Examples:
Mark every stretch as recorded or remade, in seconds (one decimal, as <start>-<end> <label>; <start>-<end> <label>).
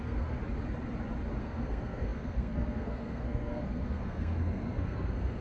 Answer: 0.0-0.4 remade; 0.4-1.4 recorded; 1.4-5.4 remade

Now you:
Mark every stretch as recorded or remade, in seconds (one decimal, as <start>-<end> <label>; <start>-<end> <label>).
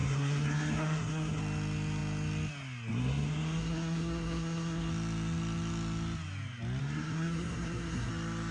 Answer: 0.0-1.4 remade; 1.4-2.9 recorded; 2.9-4.9 remade; 4.9-6.8 recorded; 6.8-8.1 remade; 8.1-8.5 recorded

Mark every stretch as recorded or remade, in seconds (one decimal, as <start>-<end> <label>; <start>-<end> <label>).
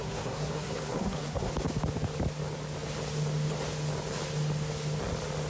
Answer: 0.0-1.5 remade; 1.5-5.5 recorded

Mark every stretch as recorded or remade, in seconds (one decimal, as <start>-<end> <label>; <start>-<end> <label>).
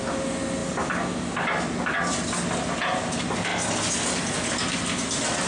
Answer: 0.0-5.5 recorded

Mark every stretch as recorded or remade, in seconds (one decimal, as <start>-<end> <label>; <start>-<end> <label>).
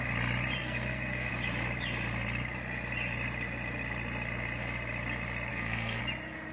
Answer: 0.0-0.6 recorded; 0.6-1.3 remade; 1.3-5.5 recorded; 5.5-6.0 remade; 6.0-6.5 recorded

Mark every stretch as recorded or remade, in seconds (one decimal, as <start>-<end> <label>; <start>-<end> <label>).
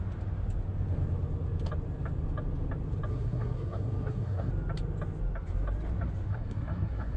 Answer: 0.0-3.1 recorded; 3.1-4.5 remade; 4.5-6.3 recorded; 6.3-7.2 remade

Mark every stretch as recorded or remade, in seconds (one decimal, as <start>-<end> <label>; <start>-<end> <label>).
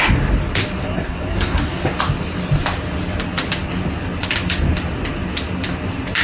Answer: 0.0-0.8 recorded; 0.8-1.8 remade; 1.8-6.2 recorded